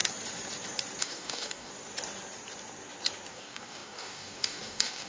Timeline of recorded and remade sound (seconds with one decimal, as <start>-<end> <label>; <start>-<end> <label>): 0.0-1.0 recorded; 1.0-1.7 remade; 1.7-3.3 recorded; 3.3-5.1 remade